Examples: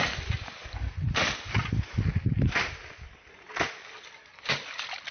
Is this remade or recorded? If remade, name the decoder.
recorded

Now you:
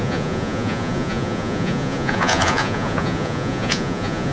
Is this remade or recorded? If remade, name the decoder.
remade, vocoder, Vocos